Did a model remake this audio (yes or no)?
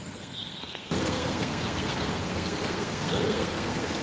yes